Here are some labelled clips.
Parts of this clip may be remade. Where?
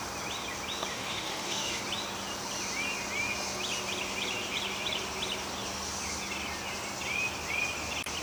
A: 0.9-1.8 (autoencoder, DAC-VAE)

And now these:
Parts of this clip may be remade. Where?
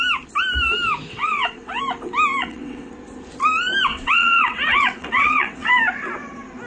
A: 1.1-1.8 (vocoder, WaveNeXt); 2.4-2.9; 3.9-5.7